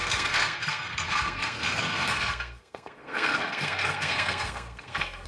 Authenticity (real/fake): fake